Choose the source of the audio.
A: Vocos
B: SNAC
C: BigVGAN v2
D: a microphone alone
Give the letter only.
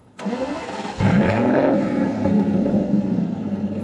B